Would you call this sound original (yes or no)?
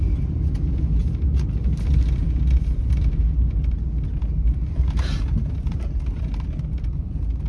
yes